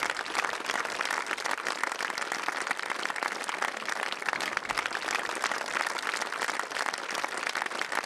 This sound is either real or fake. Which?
real